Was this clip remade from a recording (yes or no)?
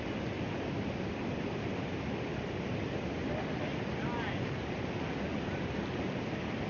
no